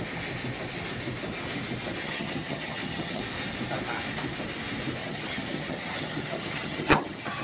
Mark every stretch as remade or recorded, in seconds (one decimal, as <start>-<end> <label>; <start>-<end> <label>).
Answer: 0.0-2.0 recorded; 2.0-3.2 remade; 3.2-5.0 recorded; 5.0-7.4 remade